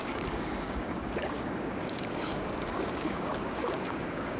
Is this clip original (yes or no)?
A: no